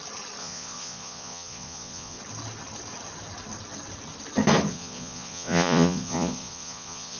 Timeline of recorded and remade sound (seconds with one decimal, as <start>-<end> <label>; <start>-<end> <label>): 0.0-0.4 recorded; 0.4-2.2 remade; 2.2-4.7 recorded; 4.7-7.2 remade